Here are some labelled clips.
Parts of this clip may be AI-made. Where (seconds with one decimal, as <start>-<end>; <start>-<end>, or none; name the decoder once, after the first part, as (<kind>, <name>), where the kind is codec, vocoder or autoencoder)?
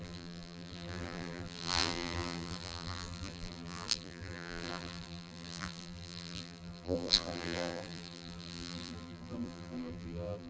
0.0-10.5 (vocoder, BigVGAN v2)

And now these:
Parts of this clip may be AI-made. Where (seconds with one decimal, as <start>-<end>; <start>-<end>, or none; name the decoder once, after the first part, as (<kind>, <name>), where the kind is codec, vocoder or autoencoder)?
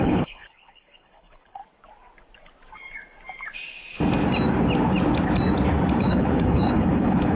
0.0-1.6 (codec, HILCodec); 6.0-7.4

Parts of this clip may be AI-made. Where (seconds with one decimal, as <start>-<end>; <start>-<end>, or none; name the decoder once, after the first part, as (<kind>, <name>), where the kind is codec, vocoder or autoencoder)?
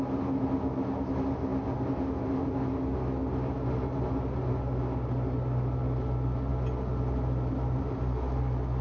none